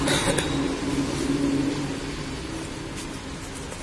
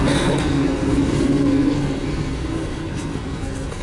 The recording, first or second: first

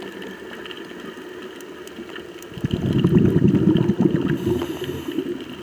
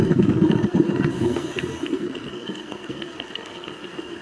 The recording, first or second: first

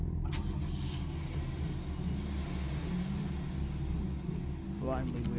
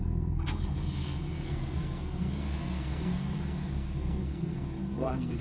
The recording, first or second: first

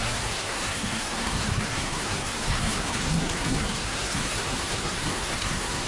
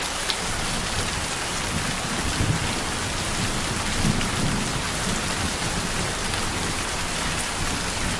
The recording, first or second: second